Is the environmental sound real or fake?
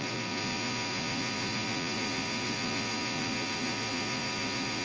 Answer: fake